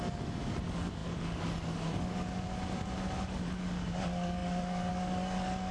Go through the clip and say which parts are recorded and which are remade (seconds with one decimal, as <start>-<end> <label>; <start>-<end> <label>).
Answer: 0.0-5.7 remade